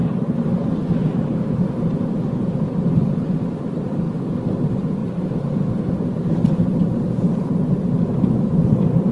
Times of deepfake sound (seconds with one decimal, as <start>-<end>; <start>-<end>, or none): 2.8-5.0; 8.4-9.1